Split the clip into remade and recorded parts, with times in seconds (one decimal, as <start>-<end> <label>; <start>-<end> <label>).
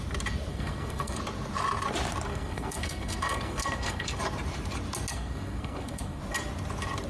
0.0-0.5 recorded; 0.5-1.2 remade; 1.2-2.3 recorded; 2.3-4.2 remade; 4.2-5.1 recorded; 5.1-6.2 remade; 6.2-7.1 recorded